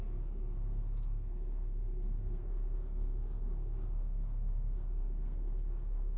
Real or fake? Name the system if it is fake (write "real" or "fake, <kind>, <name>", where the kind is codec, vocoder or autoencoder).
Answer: fake, codec, SNAC